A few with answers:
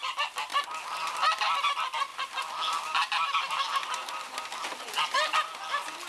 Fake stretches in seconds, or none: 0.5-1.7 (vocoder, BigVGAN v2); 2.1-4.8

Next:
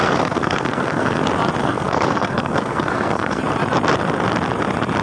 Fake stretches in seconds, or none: 0.0-1.2 (codec, SNAC); 1.6-3.4

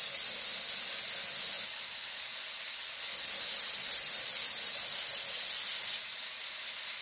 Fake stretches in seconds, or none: none

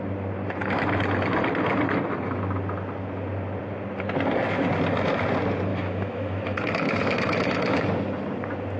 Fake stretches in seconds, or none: 5.7-7.8 (autoencoder, DAC-VAE)

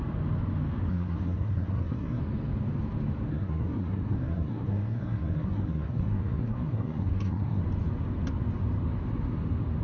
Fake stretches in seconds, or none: 0.9-2.2 (codec, SNAC); 3.3-7.6

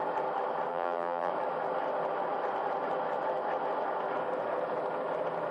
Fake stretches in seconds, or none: 0.7-1.3 (vocoder, BigVGAN v2)

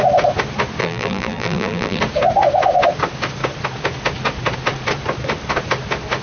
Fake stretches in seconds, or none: 0.8-2.0 (vocoder, BigVGAN v2)

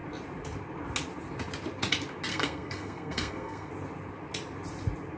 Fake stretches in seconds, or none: 2.3-3.7 (codec, SNAC)